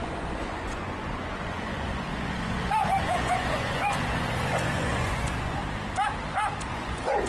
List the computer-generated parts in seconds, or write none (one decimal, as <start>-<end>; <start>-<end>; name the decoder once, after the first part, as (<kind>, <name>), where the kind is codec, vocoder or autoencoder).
0.0-5.6 (vocoder, Vocos); 6.7-7.3